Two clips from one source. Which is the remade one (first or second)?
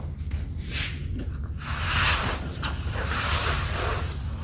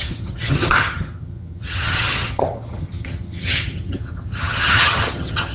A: second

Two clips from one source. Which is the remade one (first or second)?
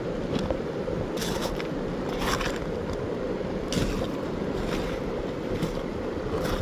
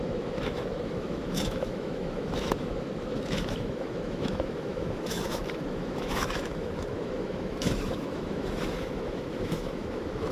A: second